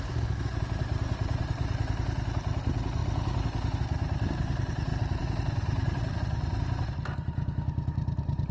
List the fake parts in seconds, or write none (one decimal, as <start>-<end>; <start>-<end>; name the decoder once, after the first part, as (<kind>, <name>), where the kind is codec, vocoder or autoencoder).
4.9-6.2 (vocoder, BigVGAN v2)